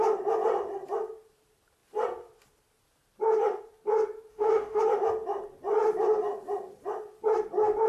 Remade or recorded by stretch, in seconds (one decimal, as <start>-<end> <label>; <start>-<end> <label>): 0.0-4.3 recorded; 4.3-4.8 remade; 4.8-7.9 recorded